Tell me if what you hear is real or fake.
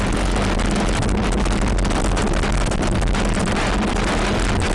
real